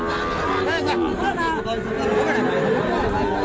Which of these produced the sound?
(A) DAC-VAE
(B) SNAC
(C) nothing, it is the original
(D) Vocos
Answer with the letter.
C